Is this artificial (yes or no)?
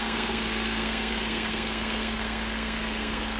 yes